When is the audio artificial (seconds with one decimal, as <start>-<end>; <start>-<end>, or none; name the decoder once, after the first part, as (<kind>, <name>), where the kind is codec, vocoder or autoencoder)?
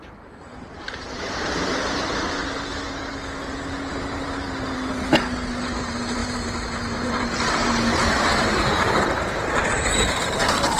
0.0-2.7 (vocoder, BigVGAN v2); 3.4-10.8